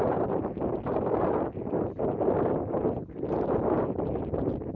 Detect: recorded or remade recorded